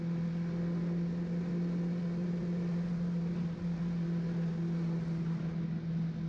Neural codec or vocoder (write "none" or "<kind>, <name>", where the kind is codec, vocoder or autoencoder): none